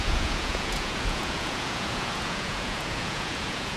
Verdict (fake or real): fake